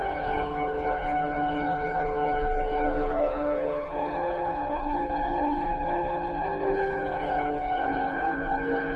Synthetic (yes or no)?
yes